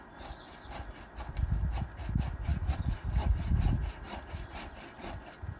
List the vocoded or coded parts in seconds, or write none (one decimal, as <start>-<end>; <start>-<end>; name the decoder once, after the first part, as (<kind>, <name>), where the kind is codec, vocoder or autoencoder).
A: none